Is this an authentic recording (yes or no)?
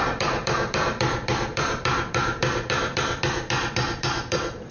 no